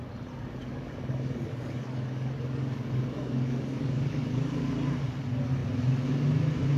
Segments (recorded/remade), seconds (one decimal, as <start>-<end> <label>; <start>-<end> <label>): 0.0-0.6 recorded; 0.6-4.7 remade; 4.7-6.8 recorded